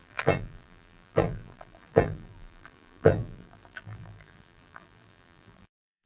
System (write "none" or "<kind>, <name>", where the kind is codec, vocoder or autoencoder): vocoder, BigVGAN v2